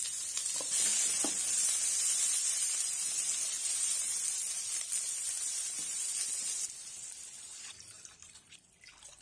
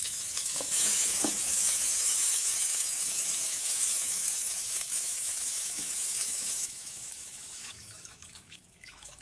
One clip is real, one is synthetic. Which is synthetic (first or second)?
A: second